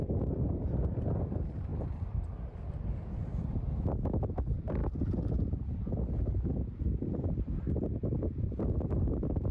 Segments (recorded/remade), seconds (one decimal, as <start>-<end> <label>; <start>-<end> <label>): 0.0-9.5 recorded